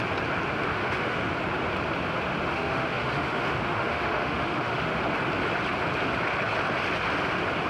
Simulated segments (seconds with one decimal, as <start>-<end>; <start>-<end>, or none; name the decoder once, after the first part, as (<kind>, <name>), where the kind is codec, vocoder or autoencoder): 0.7-1.3 (autoencoder, DAC-VAE); 2.5-5.0

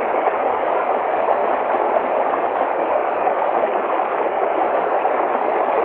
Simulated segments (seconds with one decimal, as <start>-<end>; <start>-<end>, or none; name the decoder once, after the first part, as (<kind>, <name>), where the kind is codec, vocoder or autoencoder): 0.0-1.4 (codec, DAC); 2.1-5.8

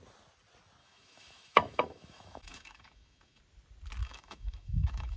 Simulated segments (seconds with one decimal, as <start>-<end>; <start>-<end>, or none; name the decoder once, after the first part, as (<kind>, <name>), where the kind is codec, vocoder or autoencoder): 0.8-3.4 (autoencoder, DAC-VAE); 4.0-5.2

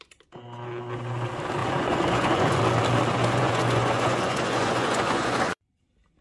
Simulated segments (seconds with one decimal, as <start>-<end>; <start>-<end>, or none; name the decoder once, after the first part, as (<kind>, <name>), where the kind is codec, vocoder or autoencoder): 1.6-2.6 (vocoder, Vocos); 3.2-5.7

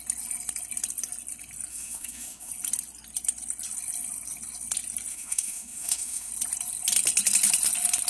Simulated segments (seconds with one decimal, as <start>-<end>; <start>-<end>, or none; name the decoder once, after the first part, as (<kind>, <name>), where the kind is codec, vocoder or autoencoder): 1.7-2.5 (autoencoder, DAC-VAE); 5.1-6.3

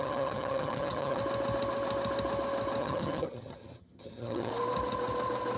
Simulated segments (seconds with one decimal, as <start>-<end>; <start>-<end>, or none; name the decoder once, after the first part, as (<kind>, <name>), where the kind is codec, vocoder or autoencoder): 0.0-1.2 (vocoder, HiFi-GAN); 2.8-4.5